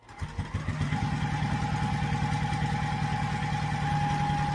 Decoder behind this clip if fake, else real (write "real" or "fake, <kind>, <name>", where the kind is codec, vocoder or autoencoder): real